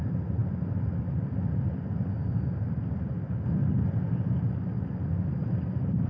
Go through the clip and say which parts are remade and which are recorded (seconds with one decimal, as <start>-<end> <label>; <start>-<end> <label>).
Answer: 0.0-6.1 recorded